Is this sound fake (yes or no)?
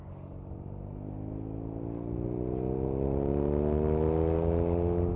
no